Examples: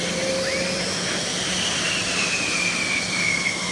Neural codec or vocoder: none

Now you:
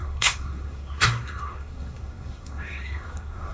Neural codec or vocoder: codec, SNAC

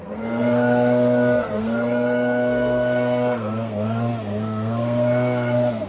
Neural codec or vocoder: codec, SNAC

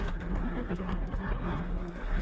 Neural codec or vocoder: codec, SNAC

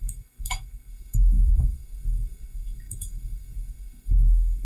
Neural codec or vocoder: codec, SNAC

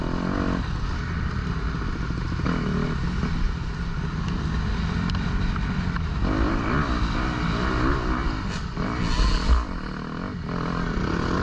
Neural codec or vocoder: none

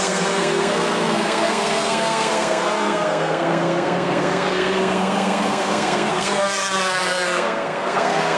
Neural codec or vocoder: codec, SNAC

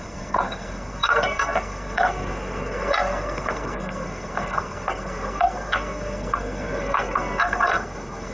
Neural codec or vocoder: codec, SNAC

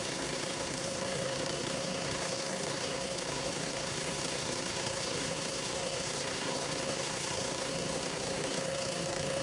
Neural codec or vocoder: codec, SNAC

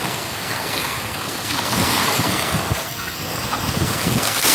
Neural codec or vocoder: codec, SNAC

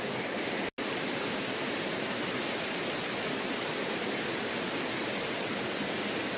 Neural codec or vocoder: none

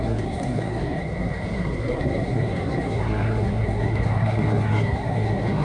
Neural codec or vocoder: codec, SNAC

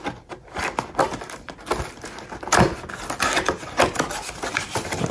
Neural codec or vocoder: none